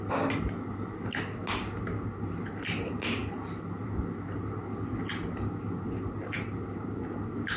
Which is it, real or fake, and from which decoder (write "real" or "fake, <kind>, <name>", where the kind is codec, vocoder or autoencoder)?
real